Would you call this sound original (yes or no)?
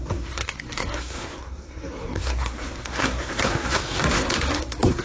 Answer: no